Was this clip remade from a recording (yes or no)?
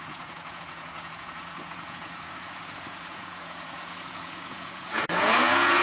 yes